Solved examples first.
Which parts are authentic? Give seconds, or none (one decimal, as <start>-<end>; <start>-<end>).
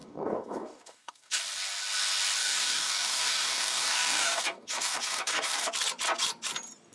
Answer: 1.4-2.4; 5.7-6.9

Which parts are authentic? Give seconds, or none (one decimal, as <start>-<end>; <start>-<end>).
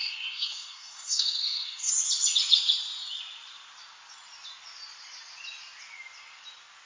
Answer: 1.9-6.9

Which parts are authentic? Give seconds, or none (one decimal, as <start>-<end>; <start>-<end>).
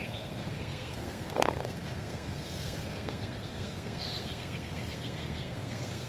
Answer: none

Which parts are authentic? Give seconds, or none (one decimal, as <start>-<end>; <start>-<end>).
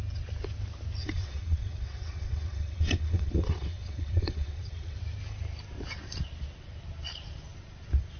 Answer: 0.0-1.0; 5.0-8.2